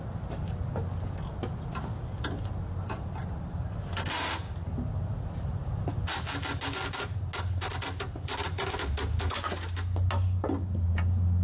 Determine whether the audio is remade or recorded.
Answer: recorded